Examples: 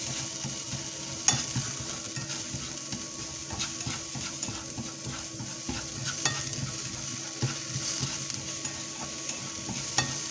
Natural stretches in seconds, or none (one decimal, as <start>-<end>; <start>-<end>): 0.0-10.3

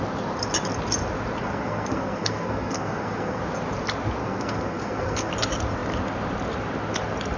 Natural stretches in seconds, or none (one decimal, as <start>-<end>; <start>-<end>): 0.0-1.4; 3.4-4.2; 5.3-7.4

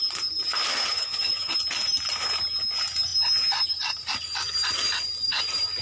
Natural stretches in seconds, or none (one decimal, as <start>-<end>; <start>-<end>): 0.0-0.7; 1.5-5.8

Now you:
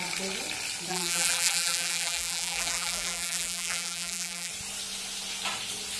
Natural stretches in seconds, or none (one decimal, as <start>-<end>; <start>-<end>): 0.0-0.9; 4.5-6.0

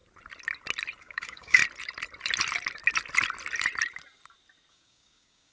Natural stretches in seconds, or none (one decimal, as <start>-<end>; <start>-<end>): 0.0-1.0; 1.6-4.7

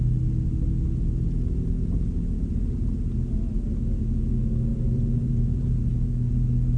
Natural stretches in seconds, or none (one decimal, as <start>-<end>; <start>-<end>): 0.0-4.7; 5.8-6.8

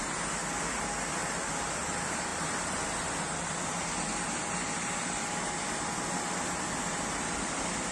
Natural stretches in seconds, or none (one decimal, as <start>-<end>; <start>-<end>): 0.0-7.9